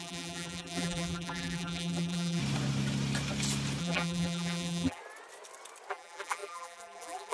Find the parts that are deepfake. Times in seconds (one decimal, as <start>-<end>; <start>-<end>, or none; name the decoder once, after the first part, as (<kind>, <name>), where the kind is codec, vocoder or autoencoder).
0.0-2.4 (vocoder, BigVGAN v2); 3.8-5.0; 5.9-7.3